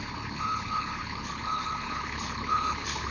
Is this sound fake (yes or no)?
yes